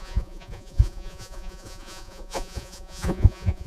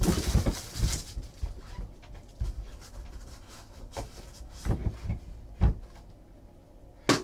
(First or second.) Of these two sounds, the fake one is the first